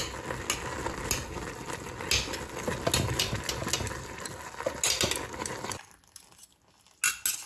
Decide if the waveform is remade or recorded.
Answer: recorded